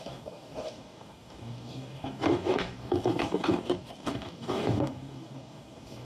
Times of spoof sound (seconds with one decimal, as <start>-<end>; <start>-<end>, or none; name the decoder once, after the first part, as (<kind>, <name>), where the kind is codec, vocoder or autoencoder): 0.0-6.0 (codec, DAC)